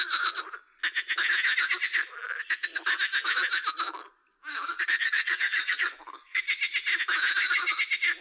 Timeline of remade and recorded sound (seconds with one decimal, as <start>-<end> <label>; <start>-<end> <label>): 0.0-4.5 recorded; 4.5-6.4 remade; 6.4-8.2 recorded